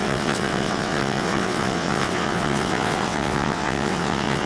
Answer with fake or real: fake